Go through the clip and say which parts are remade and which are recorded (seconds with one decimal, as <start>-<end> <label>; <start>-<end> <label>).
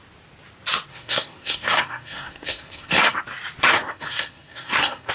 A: 0.0-0.9 recorded; 0.9-3.2 remade; 3.2-3.7 recorded; 3.7-5.1 remade